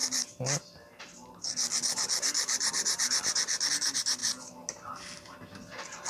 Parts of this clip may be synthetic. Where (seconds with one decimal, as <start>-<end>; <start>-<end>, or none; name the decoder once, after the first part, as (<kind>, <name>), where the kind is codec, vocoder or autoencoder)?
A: none